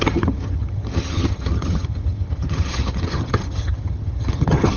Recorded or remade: remade